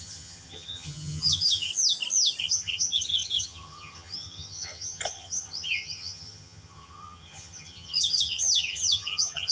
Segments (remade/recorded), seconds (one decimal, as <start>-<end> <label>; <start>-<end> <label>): 0.0-1.7 remade; 1.7-2.4 recorded; 2.4-9.5 remade